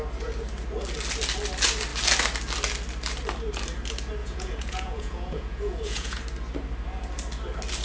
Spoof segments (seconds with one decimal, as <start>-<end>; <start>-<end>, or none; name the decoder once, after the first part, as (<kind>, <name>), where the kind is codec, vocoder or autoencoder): 4.2-6.2 (vocoder, Vocos)